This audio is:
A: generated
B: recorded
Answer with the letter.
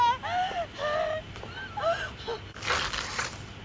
B